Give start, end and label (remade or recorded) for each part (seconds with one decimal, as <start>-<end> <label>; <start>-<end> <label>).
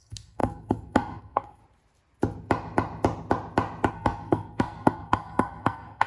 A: 0.0-1.6 remade; 1.6-3.9 recorded; 3.9-6.1 remade